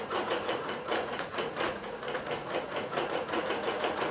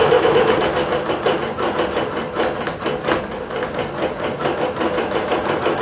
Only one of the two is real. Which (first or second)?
second